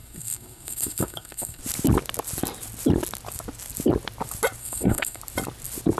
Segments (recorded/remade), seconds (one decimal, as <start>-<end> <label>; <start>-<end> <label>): 0.0-1.6 remade; 1.6-4.6 recorded; 4.6-5.2 remade; 5.2-6.0 recorded